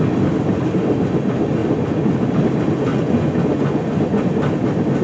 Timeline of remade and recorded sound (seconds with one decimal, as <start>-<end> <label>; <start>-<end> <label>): 0.0-1.6 recorded; 1.6-2.1 remade; 2.1-2.9 recorded; 2.9-4.2 remade; 4.2-5.0 recorded